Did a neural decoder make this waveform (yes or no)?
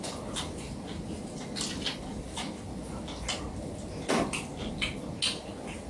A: no